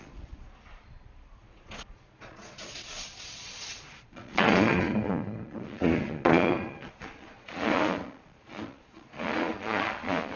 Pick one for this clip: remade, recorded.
remade